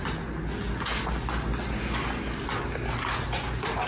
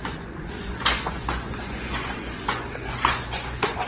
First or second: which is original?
first